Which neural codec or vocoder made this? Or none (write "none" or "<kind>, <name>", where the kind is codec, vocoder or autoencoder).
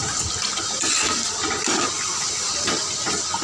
none